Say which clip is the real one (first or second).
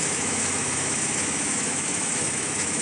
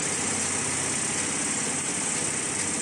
second